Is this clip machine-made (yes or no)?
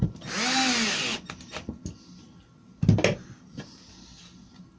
no